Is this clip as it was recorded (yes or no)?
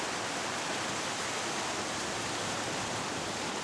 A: yes